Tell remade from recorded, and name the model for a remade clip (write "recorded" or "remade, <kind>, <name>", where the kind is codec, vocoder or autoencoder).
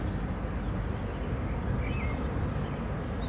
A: recorded